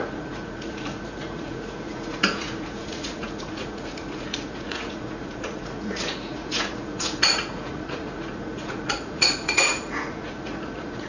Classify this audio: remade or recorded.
remade